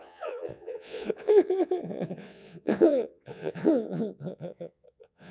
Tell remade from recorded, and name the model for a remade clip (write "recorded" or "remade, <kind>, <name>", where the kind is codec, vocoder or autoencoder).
remade, vocoder, Vocos